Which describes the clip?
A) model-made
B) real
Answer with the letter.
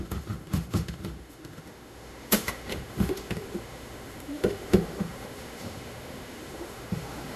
A